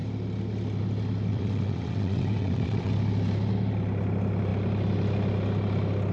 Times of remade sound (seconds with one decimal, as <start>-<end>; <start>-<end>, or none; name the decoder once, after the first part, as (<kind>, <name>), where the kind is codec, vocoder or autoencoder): 1.3-2.9 (vocoder, WaveNeXt)